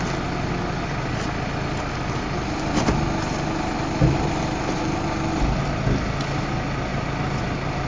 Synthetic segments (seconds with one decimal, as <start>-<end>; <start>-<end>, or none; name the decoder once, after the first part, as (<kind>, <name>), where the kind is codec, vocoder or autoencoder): none